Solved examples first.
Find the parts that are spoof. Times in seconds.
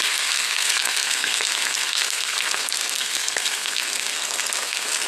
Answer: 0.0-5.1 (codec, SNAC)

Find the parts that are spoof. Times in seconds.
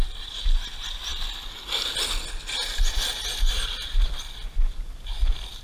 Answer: none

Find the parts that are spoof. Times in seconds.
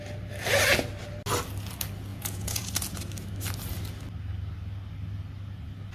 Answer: 2.1-2.7 (vocoder, Vocos)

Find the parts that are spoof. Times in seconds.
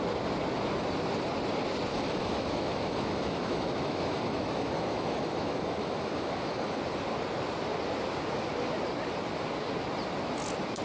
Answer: 1.9-6.8 (autoencoder, DAC-VAE)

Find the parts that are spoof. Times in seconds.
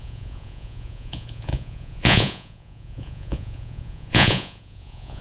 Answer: 0.0-5.2 (vocoder, Vocos)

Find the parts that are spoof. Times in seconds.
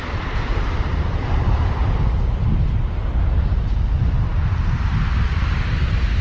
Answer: none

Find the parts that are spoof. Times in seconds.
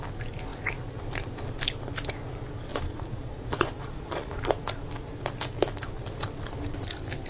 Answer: 2.7-4.4 (vocoder, Vocos)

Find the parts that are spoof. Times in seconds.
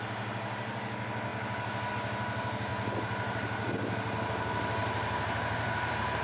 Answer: 2.7-3.7 (vocoder, BigVGAN v2); 4.8-6.2